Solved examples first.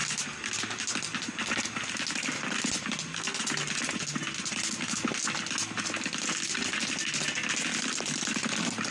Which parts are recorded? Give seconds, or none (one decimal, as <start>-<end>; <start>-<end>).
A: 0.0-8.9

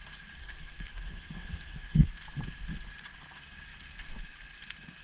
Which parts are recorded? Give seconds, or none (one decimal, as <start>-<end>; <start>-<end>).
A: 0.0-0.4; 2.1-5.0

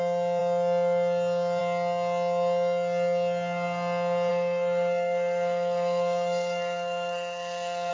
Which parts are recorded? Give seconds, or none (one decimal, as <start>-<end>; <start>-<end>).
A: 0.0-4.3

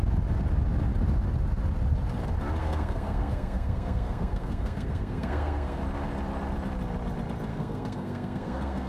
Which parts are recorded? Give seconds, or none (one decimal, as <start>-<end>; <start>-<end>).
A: 0.0-2.6; 5.8-7.5

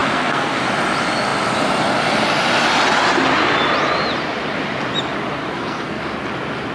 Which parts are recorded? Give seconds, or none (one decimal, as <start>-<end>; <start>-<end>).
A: 0.6-5.5; 6.0-6.7

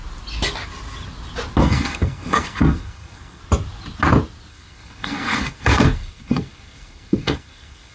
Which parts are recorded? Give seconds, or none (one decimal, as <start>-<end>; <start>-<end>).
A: 0.0-1.6; 3.4-4.5

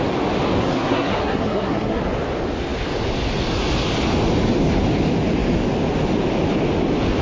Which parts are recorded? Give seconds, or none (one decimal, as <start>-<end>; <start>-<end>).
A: 0.0-0.6; 2.0-7.2